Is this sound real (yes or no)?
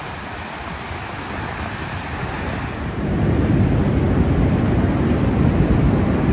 yes